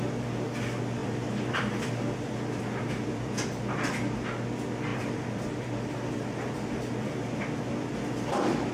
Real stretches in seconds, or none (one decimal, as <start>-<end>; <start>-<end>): 0.0-1.0; 3.4-4.9; 7.9-8.7